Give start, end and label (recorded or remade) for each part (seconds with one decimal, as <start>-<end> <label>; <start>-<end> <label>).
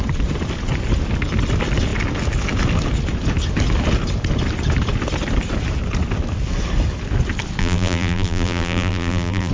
0.0-7.6 recorded; 7.6-9.5 remade